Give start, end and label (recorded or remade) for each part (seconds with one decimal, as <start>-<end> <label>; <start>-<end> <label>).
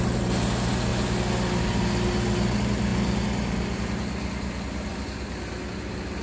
0.0-6.2 recorded